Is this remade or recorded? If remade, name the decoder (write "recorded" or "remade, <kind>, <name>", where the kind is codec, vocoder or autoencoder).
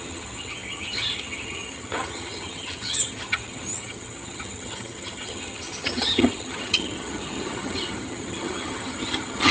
remade, vocoder, HiFi-GAN